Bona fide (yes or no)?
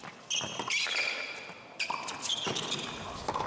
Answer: yes